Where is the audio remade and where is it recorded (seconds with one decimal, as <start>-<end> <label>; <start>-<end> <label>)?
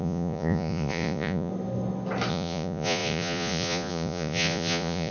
0.0-1.5 remade; 1.5-2.3 recorded; 2.3-5.1 remade